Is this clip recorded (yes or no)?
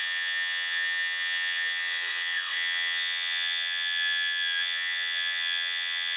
no